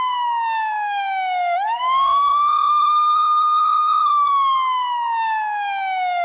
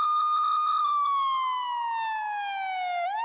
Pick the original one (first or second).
second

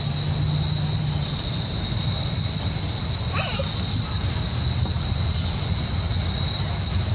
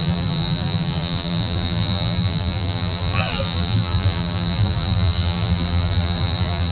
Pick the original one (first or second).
first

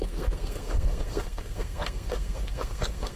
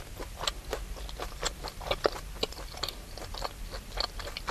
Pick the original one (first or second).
second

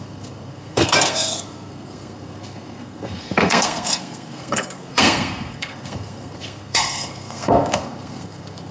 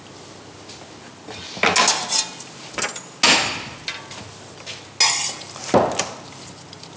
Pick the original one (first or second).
second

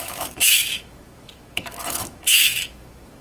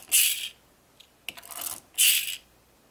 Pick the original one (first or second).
second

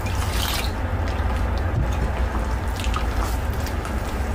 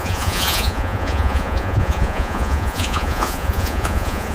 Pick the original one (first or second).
first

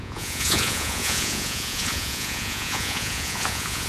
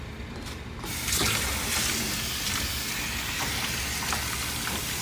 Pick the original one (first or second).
second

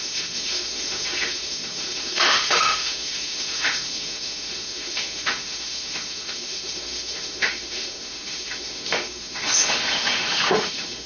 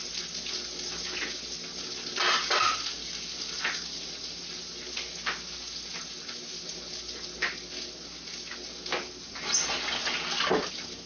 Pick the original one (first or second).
second